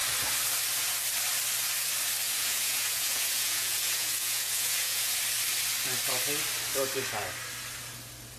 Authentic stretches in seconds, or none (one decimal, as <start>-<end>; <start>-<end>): 0.0-2.2; 5.2-8.4